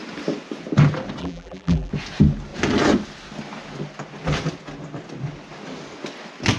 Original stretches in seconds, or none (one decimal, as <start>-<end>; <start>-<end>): 0.0-1.2; 1.9-6.6